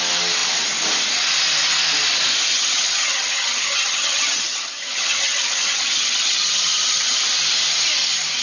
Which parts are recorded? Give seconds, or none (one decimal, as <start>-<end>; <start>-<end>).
0.0-2.5; 7.2-8.4